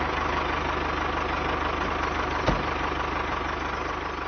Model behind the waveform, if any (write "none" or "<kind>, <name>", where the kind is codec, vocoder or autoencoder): none